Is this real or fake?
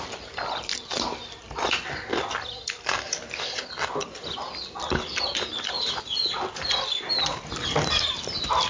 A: real